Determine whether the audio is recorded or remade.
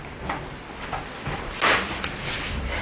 recorded